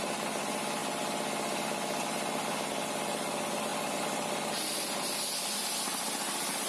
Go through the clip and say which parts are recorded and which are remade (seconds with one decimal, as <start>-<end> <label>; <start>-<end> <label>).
0.0-6.7 recorded

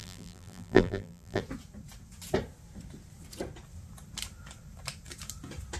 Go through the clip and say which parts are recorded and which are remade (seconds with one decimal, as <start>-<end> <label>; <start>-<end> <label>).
0.0-1.4 remade; 1.4-5.8 recorded